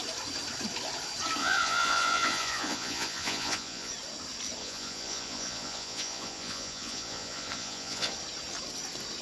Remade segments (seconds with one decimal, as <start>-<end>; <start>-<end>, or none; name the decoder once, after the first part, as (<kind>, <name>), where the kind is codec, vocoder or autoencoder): 1.4-3.9 (vocoder, Vocos); 4.6-8.1